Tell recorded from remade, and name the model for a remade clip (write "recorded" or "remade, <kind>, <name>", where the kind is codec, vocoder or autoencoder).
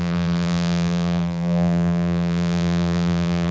remade, vocoder, BigVGAN v2